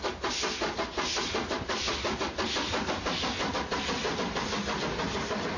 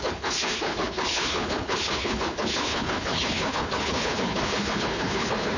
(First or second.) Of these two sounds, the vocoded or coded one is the second